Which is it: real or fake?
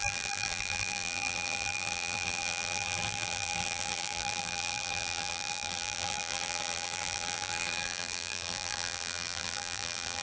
fake